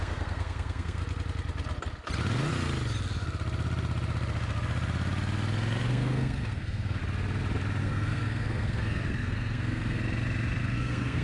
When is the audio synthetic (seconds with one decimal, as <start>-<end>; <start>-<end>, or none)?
0.0-1.0; 5.9-7.0; 7.8-10.0; 10.6-11.2